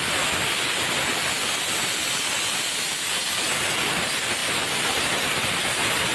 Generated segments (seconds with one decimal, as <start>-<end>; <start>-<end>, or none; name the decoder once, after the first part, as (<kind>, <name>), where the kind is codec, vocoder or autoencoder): none